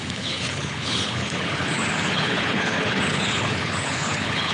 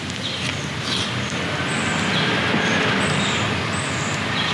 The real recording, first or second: second